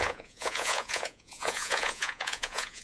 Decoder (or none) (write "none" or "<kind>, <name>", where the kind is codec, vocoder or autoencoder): vocoder, Vocos